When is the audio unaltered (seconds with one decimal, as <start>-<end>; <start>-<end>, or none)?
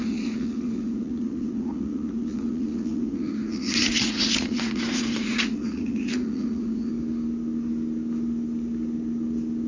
6.9-9.7